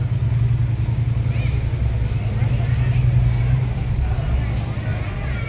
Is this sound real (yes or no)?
yes